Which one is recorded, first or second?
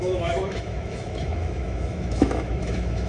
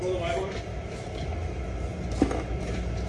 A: second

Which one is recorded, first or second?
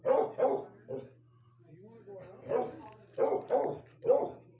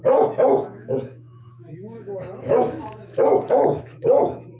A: first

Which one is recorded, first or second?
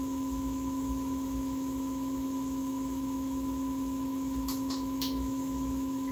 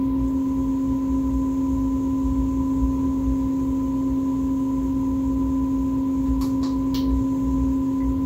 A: second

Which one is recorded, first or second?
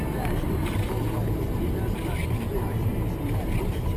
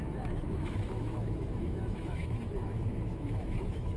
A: first